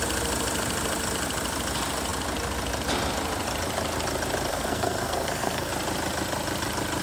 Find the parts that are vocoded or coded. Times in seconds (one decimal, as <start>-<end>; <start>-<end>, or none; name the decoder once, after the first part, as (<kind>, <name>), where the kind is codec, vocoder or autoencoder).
4.5-5.7 (codec, SNAC)

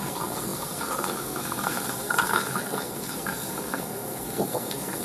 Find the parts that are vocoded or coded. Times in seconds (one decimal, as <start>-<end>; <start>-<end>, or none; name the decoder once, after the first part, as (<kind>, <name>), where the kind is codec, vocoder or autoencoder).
0.0-5.0 (codec, SNAC)

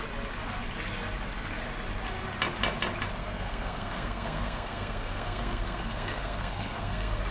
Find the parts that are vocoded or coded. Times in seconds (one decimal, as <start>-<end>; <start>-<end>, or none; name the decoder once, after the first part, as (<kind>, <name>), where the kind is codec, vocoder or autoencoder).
3.2-7.3 (codec, SNAC)

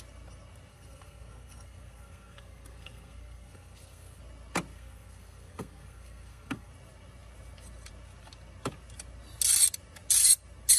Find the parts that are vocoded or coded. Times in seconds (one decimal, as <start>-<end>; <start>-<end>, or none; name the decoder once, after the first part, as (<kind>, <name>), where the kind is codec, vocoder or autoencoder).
0.7-4.2 (codec, SNAC); 4.7-6.7

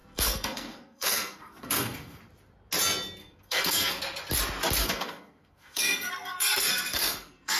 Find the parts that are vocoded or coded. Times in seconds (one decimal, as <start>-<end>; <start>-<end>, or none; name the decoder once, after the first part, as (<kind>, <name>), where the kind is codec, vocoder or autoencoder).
0.0-2.2 (codec, SNAC); 3.2-4.0; 4.8-7.6

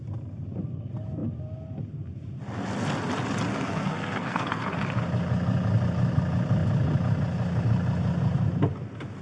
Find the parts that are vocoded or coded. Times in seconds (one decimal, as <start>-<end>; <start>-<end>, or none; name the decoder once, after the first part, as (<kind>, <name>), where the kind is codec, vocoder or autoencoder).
3.5-4.6 (codec, SNAC)

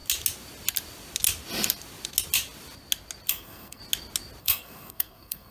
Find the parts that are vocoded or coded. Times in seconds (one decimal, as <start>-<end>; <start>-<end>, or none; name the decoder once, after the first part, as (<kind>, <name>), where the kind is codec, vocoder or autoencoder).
3.3-3.8 (codec, SNAC); 4.4-5.5